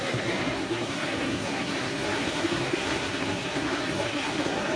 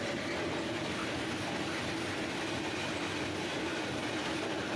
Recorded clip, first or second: second